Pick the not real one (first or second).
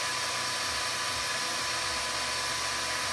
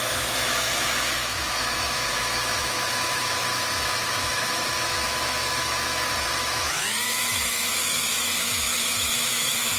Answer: second